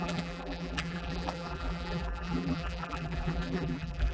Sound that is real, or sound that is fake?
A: fake